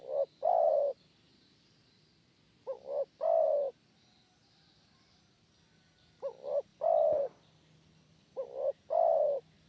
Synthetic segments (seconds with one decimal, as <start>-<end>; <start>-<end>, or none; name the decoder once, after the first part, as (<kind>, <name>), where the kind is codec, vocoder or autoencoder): 0.0-9.7 (vocoder, BigVGAN v2)